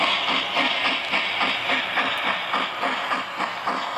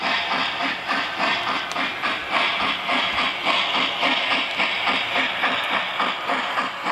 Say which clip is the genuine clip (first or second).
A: first